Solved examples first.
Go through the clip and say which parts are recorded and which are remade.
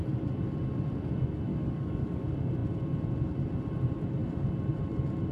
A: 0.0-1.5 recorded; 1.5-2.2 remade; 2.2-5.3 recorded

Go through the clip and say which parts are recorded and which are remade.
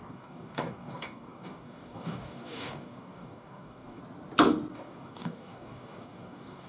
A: 0.0-4.0 remade; 4.0-4.7 recorded; 4.7-6.7 remade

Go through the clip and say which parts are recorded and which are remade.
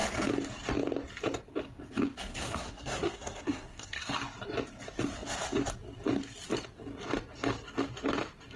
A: 0.0-2.3 recorded; 2.3-4.1 remade; 4.1-8.6 recorded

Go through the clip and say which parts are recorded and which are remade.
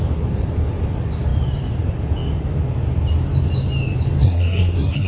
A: 0.0-4.2 recorded; 4.2-5.1 remade